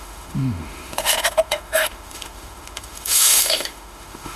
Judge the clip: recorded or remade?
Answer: remade